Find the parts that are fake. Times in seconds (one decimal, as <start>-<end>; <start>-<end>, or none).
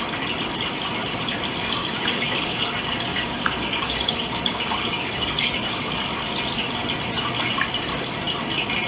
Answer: 1.8-2.7; 3.1-5.9